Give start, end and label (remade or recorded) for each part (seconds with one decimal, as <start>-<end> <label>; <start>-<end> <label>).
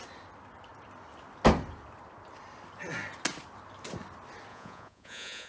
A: 0.0-4.5 recorded; 4.5-5.5 remade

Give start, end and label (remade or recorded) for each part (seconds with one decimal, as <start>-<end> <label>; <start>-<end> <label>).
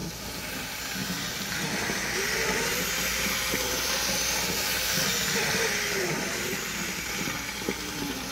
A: 0.0-1.0 recorded; 1.0-2.0 remade; 2.0-2.7 recorded; 2.7-7.0 remade; 7.0-8.3 recorded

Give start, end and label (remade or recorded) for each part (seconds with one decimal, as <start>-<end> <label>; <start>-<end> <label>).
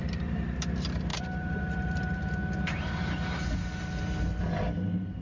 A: 0.0-1.1 recorded; 1.1-2.9 remade; 2.9-5.2 recorded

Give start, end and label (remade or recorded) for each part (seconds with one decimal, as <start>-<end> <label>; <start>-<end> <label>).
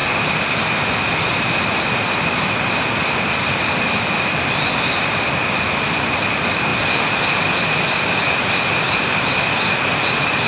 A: 0.0-10.5 recorded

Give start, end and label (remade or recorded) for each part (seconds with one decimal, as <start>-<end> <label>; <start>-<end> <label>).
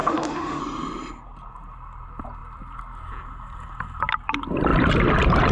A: 0.0-0.6 remade; 0.6-5.5 recorded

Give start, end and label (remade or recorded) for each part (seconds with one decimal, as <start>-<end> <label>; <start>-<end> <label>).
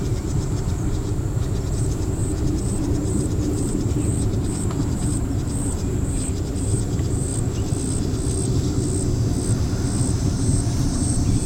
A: 0.0-7.3 remade; 7.3-10.2 recorded; 10.2-11.5 remade